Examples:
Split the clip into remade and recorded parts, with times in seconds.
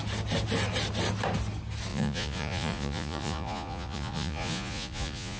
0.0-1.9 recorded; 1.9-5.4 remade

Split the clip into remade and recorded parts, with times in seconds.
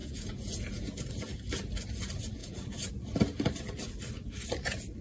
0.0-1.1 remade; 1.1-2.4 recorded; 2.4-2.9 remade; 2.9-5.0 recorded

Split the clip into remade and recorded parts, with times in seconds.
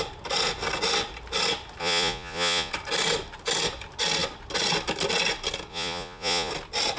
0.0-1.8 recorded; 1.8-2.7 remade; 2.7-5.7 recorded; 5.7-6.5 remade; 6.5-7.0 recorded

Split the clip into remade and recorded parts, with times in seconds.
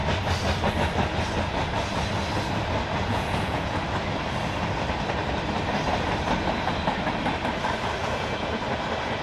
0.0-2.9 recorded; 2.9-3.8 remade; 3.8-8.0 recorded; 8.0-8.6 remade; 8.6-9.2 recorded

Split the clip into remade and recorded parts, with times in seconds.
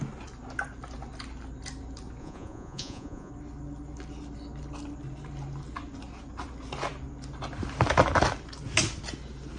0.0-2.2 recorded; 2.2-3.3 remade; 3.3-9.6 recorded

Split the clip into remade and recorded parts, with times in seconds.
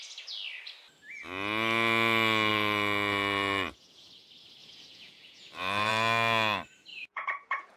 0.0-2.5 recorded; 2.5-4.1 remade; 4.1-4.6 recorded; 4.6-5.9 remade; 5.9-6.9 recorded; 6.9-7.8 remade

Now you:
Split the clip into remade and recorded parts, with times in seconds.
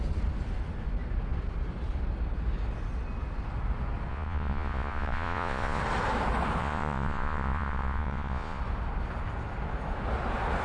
0.0-4.1 recorded; 4.1-5.8 remade; 5.8-6.6 recorded; 6.6-8.6 remade; 8.6-10.6 recorded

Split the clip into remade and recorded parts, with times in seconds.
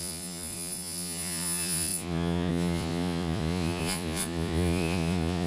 0.0-5.5 remade